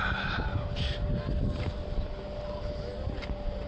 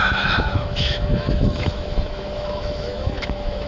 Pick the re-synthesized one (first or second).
second